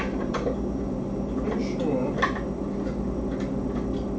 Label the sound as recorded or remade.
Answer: recorded